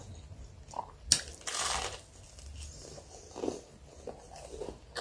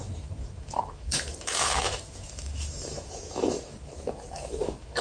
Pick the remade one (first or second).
second